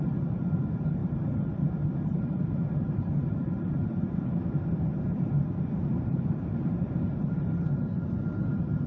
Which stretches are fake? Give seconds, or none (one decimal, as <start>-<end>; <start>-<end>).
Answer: 1.0-5.0; 5.8-7.8